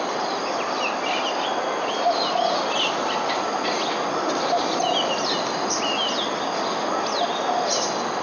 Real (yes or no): yes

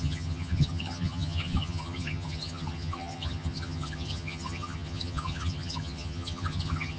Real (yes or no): no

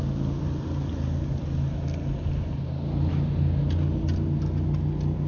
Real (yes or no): yes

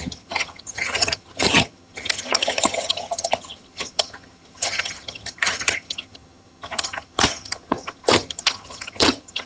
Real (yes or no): no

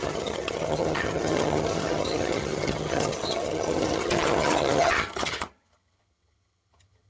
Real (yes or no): no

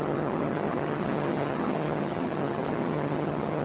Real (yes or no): no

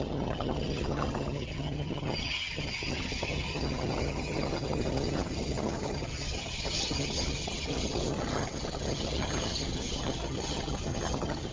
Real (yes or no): no